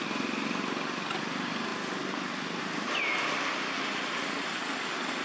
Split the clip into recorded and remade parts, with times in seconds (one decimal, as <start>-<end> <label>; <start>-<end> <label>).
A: 0.0-5.2 recorded